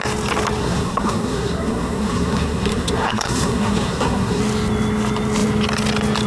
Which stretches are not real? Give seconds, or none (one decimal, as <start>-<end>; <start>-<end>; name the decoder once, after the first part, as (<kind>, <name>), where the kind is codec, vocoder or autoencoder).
0.6-4.4 (codec, SNAC)